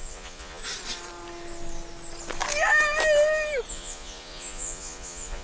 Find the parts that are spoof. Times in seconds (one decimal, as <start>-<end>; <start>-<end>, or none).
0.0-0.6; 3.7-5.4